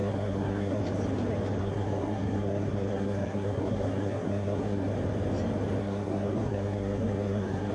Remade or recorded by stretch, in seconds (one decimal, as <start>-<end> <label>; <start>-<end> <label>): 0.0-0.8 remade; 0.8-1.6 recorded; 1.6-4.9 remade; 4.9-5.8 recorded; 5.8-7.7 remade